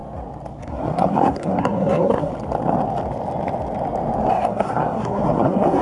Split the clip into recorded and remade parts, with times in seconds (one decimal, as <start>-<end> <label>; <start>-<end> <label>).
0.0-0.6 recorded; 0.6-2.3 remade; 2.3-4.3 recorded; 4.3-5.8 remade